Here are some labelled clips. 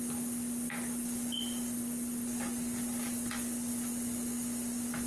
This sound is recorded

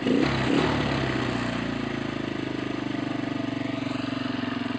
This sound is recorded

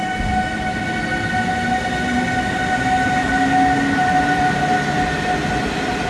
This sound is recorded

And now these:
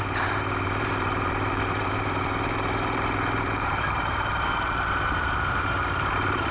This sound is remade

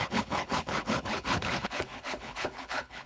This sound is remade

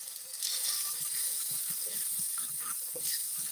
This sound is remade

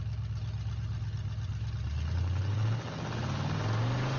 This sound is recorded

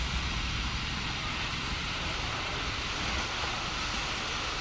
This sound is recorded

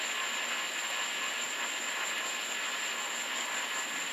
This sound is recorded